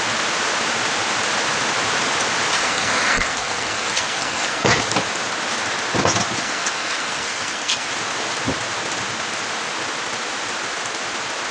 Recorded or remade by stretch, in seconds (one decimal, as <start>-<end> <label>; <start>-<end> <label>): 0.0-2.5 recorded; 2.5-4.8 remade; 4.8-6.4 recorded; 6.4-7.9 remade; 7.9-11.5 recorded